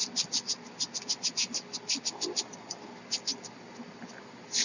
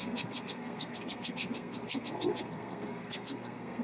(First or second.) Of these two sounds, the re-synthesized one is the second